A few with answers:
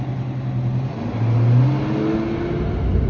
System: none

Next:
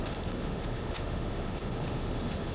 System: autoencoder, DAC-VAE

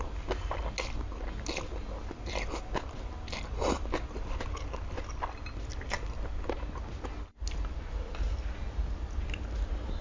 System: none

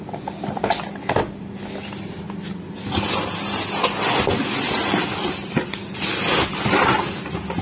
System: none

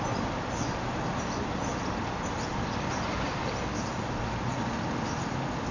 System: none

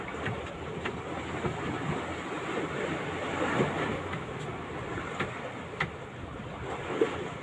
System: none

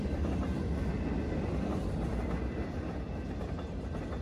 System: none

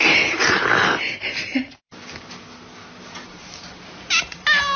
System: none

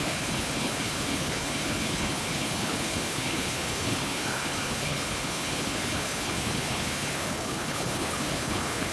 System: codec, HILCodec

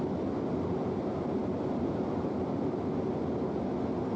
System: none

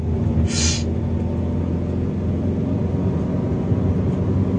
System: none